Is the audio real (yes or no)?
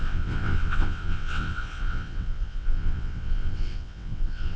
no